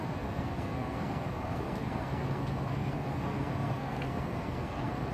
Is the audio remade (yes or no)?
yes